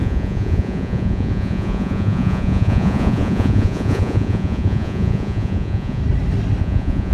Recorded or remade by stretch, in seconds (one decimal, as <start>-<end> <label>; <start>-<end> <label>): 0.0-6.0 remade; 6.0-6.6 recorded; 6.6-7.1 remade